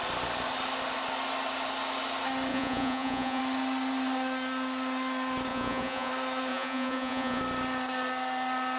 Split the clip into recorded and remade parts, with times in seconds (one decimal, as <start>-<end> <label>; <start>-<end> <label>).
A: 0.0-2.5 recorded; 2.5-3.4 remade; 3.4-5.5 recorded; 5.5-6.1 remade; 6.1-6.5 recorded; 6.5-7.4 remade; 7.4-8.8 recorded

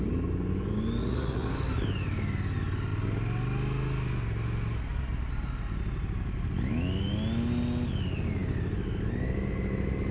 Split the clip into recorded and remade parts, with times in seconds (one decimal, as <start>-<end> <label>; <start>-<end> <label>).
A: 0.0-1.0 recorded; 1.0-1.5 remade; 1.5-10.1 recorded

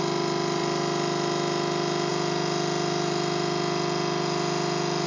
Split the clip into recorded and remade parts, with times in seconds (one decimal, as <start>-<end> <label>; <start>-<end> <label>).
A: 0.0-5.1 recorded

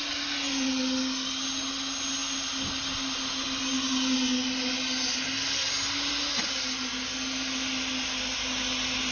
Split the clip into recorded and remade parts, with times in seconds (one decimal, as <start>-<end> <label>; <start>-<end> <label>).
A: 0.0-9.1 recorded